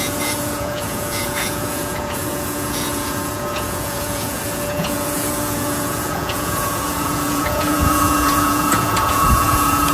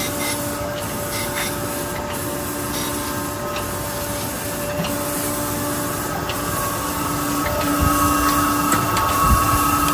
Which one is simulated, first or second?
first